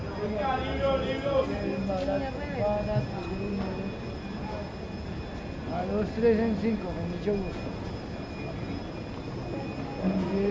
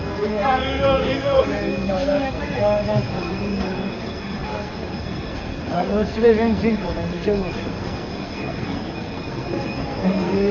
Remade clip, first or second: second